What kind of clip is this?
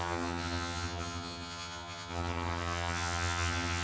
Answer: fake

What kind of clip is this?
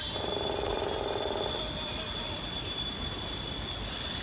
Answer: real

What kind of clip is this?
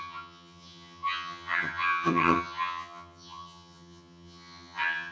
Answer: fake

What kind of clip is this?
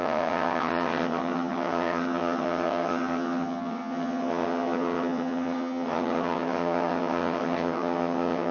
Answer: fake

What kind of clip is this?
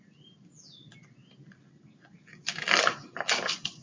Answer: real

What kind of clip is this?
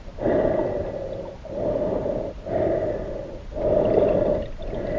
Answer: real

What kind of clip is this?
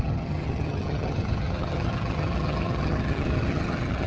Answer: fake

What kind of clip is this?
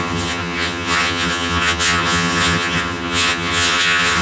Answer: fake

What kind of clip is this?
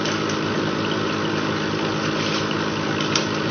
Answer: real